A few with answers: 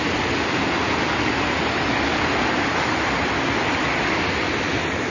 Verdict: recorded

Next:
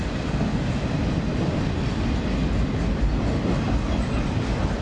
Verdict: recorded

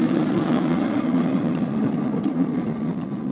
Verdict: remade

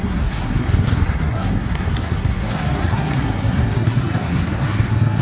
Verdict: remade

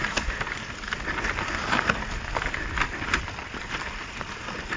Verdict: recorded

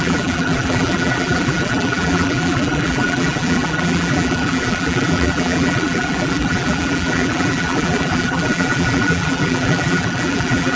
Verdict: remade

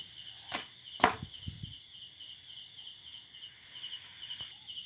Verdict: recorded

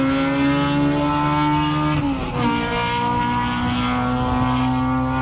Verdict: recorded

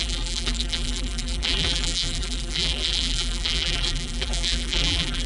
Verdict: remade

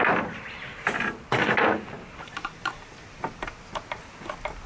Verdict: recorded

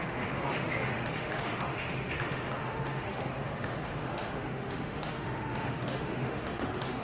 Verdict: remade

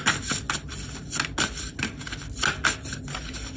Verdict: recorded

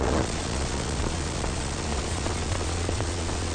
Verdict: remade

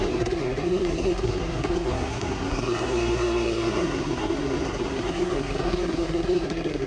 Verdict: remade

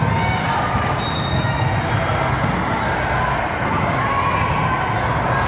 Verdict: recorded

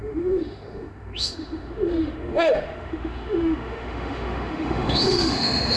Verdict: remade